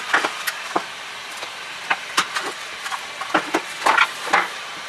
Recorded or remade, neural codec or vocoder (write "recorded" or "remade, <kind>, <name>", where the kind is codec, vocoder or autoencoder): recorded